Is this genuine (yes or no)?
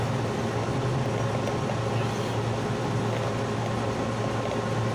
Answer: yes